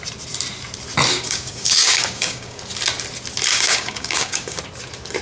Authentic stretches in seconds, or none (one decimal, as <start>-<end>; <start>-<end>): 0.0-1.1; 2.6-3.5; 4.6-5.2